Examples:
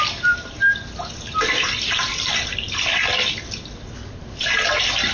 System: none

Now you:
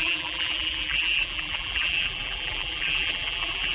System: vocoder, BigVGAN v2